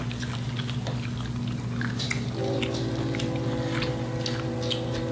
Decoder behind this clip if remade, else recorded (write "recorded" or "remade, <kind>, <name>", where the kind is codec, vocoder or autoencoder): recorded